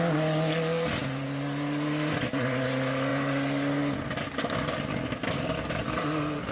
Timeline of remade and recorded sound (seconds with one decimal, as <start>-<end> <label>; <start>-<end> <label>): 0.0-6.5 recorded